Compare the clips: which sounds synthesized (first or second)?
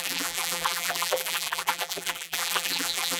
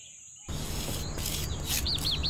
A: first